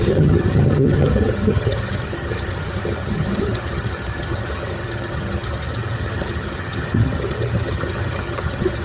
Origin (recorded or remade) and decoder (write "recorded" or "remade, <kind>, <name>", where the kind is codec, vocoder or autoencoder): remade, vocoder, HiFi-GAN